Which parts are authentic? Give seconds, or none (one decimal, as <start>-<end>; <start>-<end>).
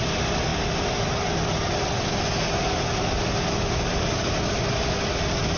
0.0-5.6